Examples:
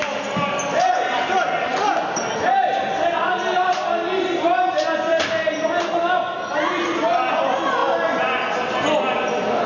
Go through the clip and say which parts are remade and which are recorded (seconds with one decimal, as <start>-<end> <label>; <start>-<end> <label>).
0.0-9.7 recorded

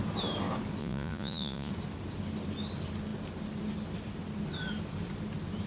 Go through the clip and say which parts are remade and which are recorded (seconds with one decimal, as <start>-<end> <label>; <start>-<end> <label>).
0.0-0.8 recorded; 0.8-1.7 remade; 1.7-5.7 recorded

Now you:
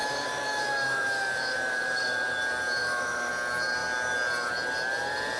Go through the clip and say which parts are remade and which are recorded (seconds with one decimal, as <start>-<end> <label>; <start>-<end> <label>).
0.0-2.4 remade; 2.4-2.8 recorded; 2.8-3.3 remade; 3.3-5.4 recorded